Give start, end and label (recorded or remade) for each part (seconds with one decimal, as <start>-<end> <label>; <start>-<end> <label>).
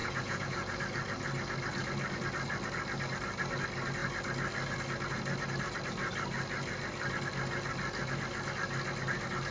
0.0-0.8 remade; 0.8-9.5 recorded